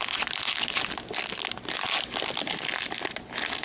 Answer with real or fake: real